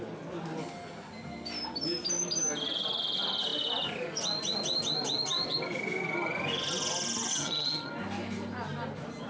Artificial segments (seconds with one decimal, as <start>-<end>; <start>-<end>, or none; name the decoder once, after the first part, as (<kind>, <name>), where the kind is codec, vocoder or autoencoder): 7.3-7.9 (vocoder, HiFi-GAN)